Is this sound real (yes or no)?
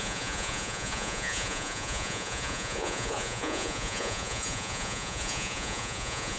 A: no